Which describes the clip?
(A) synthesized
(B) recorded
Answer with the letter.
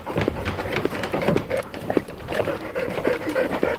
A